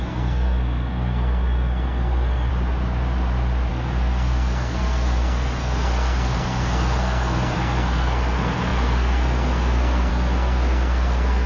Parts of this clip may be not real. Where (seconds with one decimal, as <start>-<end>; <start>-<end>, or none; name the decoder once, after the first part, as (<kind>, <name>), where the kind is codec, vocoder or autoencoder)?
0.0-2.5 (codec, SNAC); 3.7-11.5